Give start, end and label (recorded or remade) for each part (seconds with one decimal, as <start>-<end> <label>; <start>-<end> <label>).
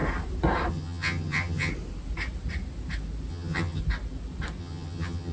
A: 0.0-0.7 recorded; 0.7-1.7 remade; 1.7-3.3 recorded; 3.3-3.8 remade; 3.8-4.6 recorded; 4.6-5.3 remade